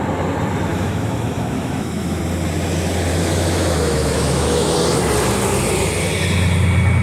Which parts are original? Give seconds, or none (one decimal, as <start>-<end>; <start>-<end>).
0.0-0.7; 2.2-3.1; 4.7-7.0

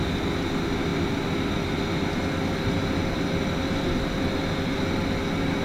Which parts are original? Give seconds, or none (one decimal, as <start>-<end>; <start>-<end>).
0.0-5.6

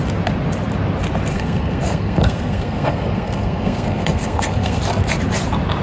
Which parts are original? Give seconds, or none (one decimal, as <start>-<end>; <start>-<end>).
0.0-1.3; 4.8-5.8